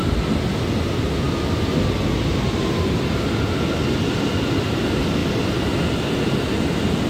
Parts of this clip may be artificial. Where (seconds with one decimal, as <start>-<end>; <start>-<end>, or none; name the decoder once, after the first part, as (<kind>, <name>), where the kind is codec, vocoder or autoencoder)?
none